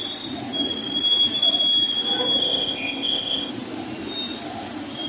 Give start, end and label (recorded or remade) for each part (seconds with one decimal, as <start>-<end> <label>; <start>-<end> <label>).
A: 0.0-2.4 recorded; 2.4-3.5 remade; 3.5-5.1 recorded